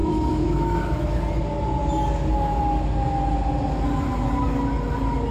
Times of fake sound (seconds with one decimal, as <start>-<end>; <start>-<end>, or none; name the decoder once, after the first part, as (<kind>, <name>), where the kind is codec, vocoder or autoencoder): 0.0-1.2 (autoencoder, DAC-VAE)